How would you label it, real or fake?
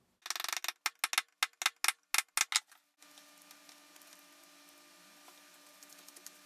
real